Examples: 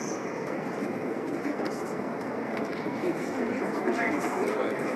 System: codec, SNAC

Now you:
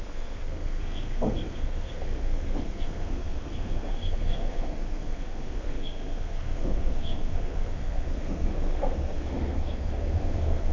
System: codec, SNAC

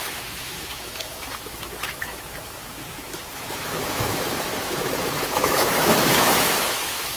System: autoencoder, DAC-VAE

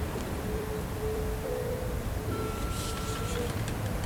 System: vocoder, BigVGAN v2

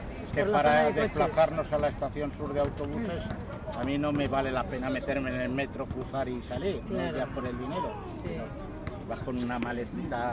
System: none